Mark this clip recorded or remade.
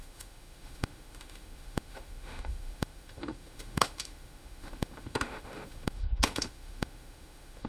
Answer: remade